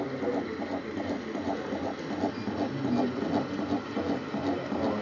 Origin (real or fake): real